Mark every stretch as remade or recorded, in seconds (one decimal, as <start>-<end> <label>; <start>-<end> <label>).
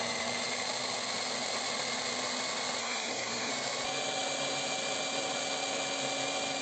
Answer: 0.0-2.8 recorded; 2.8-3.5 remade; 3.5-6.6 recorded